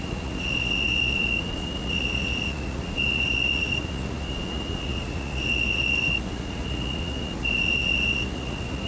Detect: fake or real fake